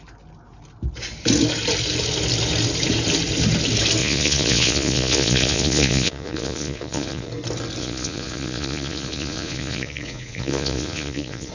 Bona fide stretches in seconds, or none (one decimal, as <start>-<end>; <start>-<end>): 0.0-4.0; 7.3-7.8